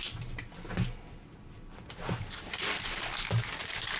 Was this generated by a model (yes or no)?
no